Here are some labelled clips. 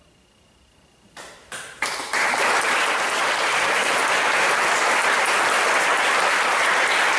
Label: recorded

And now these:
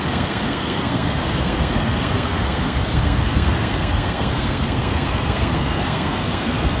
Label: remade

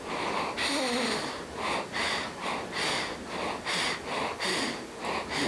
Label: recorded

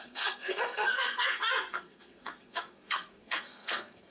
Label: remade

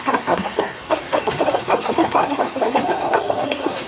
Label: remade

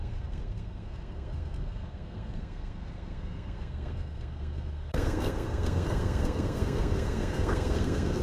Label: remade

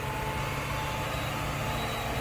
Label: recorded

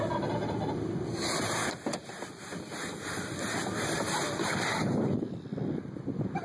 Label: recorded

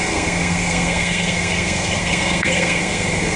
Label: remade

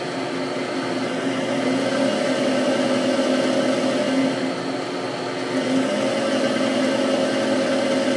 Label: recorded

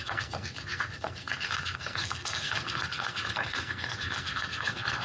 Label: remade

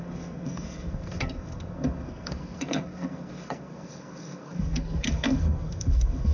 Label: remade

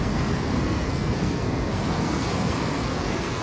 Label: remade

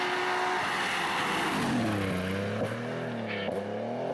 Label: recorded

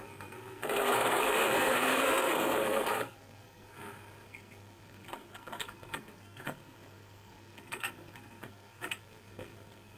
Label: remade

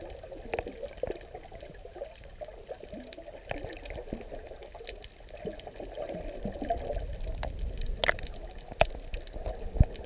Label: recorded